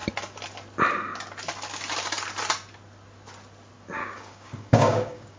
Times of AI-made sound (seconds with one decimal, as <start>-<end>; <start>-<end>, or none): 4.0-5.4